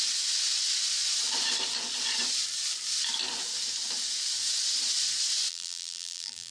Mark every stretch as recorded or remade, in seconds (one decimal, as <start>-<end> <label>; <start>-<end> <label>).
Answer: 0.0-5.5 recorded; 5.5-6.5 remade